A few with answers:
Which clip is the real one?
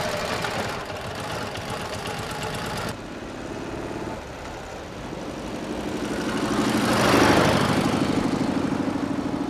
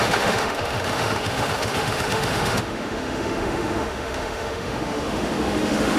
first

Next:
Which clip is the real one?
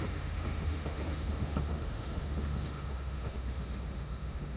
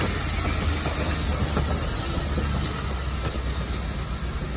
second